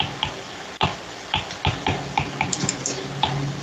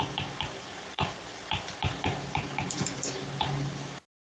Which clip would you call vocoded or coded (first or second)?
second